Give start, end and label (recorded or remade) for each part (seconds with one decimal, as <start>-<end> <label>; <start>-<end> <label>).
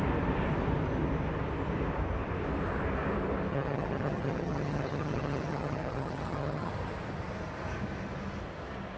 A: 0.0-3.5 recorded; 3.5-6.7 remade; 6.7-9.0 recorded